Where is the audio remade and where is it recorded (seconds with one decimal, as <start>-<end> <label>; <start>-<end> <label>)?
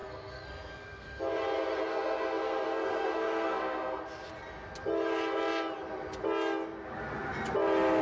0.0-1.2 remade; 1.2-1.9 recorded; 1.9-4.0 remade; 4.0-8.0 recorded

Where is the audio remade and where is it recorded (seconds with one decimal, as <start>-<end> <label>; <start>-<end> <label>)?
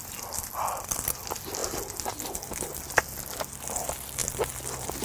0.0-5.0 recorded